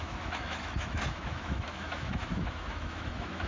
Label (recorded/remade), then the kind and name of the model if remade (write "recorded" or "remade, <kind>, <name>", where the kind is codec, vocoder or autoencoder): remade, autoencoder, DAC-VAE